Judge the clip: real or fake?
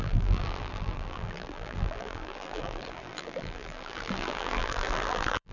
fake